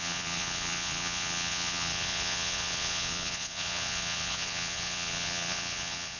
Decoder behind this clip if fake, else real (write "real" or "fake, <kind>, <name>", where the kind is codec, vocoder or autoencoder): fake, vocoder, Vocos